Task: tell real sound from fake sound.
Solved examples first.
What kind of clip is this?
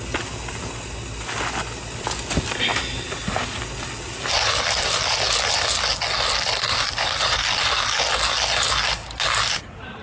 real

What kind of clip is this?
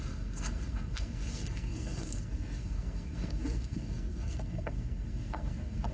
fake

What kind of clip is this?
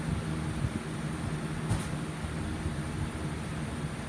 real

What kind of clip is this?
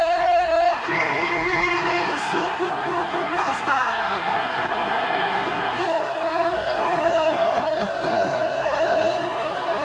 fake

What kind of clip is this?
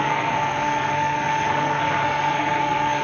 fake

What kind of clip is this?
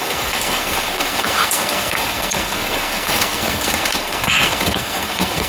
fake